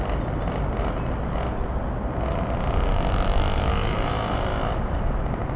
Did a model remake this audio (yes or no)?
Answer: no